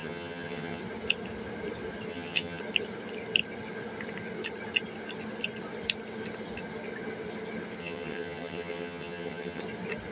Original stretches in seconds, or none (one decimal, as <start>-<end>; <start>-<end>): 0.8-2.1; 2.6-7.8; 9.6-10.1